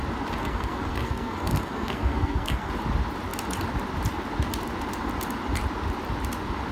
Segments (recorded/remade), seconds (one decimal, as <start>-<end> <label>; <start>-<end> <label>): 0.0-0.4 recorded; 0.4-2.7 remade; 2.7-6.7 recorded